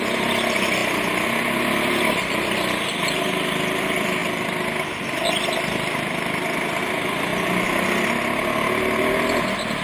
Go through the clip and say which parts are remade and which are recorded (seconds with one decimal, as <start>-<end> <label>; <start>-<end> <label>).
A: 0.0-9.8 recorded